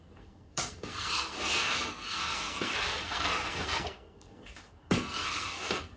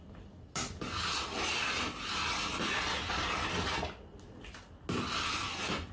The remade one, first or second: first